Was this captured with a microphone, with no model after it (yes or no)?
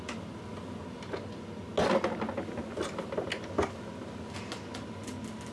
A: yes